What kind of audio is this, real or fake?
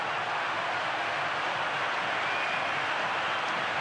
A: real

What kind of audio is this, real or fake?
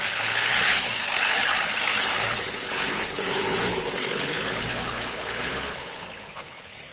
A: fake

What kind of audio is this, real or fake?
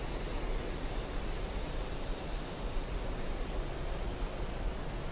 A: real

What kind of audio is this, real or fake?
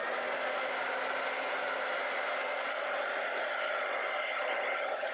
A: real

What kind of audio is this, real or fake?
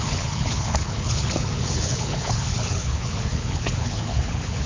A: fake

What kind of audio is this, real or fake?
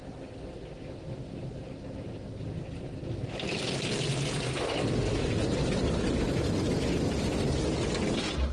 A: real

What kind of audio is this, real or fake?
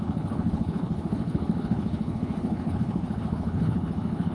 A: fake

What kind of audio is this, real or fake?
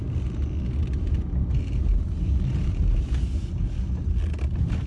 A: real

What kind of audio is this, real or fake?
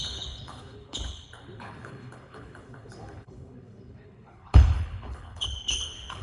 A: fake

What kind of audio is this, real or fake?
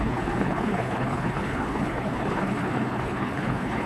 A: fake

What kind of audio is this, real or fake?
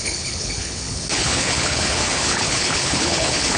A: fake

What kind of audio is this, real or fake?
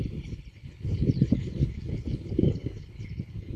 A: fake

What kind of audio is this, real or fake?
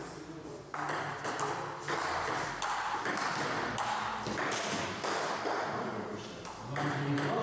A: real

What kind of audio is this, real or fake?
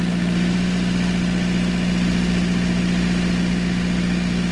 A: real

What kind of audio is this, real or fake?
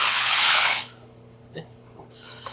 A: fake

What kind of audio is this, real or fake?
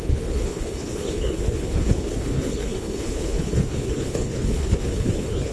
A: fake